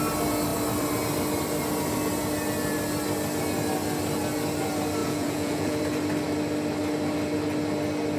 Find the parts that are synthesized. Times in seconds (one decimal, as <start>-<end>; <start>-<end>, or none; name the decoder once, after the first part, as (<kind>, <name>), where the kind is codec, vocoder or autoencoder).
5.0-5.8 (vocoder, Vocos)